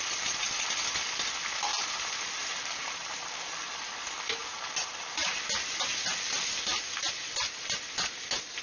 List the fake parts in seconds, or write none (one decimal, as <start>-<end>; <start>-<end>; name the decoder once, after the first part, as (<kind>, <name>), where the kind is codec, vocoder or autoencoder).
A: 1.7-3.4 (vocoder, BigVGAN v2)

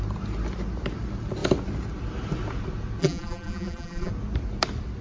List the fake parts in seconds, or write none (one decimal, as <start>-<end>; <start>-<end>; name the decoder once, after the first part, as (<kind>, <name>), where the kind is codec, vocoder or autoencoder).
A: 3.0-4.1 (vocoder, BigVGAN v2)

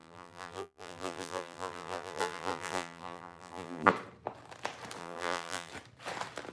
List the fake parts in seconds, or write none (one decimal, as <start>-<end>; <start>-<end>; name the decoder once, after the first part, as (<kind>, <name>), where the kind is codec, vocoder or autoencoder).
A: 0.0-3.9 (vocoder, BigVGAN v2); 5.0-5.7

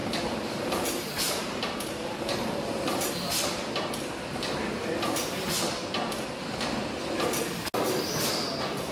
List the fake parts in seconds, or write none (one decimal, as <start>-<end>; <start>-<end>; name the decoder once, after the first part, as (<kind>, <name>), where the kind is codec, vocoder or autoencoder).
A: 0.0-3.1 (vocoder, BigVGAN v2)

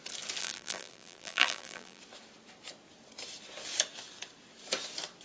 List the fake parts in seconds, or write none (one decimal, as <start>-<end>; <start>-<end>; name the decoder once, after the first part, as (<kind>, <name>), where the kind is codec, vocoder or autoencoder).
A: 0.4-2.0 (vocoder, BigVGAN v2)